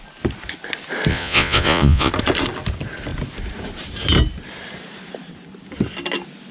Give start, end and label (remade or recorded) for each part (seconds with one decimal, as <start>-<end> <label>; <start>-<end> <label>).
0.0-1.1 recorded; 1.1-2.1 remade; 2.1-6.5 recorded